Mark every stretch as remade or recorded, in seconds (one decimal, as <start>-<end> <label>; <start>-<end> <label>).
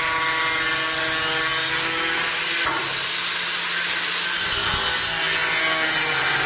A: 0.0-6.5 recorded